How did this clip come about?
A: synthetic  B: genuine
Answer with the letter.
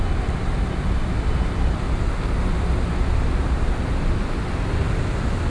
B